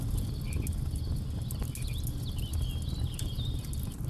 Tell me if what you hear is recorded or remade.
recorded